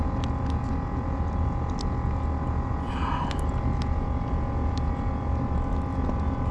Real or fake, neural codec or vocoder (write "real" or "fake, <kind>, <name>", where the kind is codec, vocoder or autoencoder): real